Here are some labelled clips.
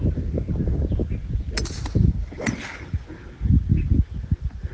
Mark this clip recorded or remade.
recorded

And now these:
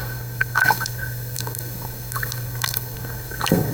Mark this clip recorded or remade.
remade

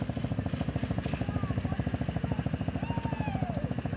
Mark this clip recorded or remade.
recorded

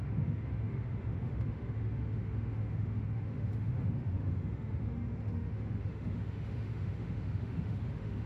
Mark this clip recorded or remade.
remade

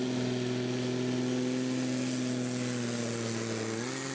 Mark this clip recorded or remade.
recorded